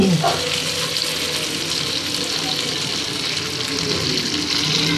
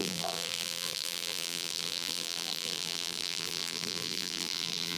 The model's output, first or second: second